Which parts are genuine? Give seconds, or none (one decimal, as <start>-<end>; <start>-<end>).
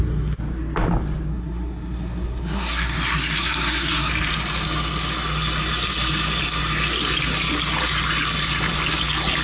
0.0-1.3; 4.1-9.4